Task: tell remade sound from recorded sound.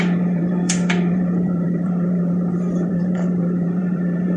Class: remade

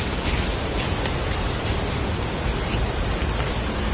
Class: recorded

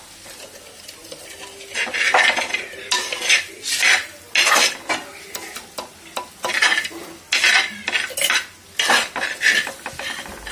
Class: recorded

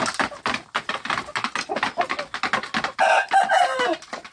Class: recorded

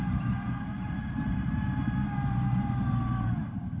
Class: remade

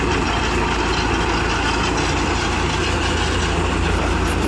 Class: recorded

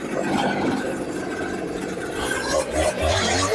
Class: recorded